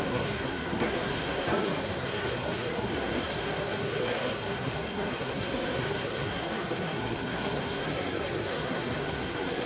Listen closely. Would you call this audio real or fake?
fake